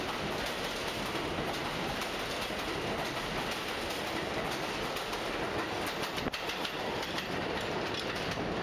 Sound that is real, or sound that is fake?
real